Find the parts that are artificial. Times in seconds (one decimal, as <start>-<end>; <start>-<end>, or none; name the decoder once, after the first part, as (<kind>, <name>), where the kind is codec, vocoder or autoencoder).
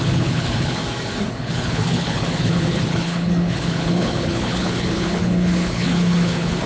0.0-0.8 (codec, HILCodec); 1.3-6.7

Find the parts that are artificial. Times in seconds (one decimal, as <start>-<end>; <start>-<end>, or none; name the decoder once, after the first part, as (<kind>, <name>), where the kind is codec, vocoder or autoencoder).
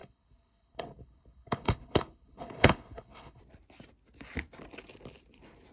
0.0-3.4 (codec, HILCodec)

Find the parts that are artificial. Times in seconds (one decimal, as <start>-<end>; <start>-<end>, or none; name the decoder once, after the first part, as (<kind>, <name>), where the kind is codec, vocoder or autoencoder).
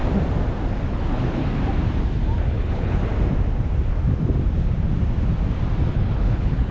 0.8-1.4 (codec, HILCodec); 2.5-3.0; 5.9-6.7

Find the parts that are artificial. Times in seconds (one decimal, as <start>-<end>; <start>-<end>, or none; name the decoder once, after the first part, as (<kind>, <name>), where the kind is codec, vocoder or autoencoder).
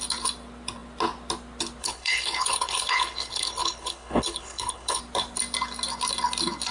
1.8-5.0 (codec, HILCodec)